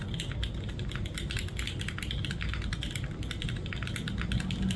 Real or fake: real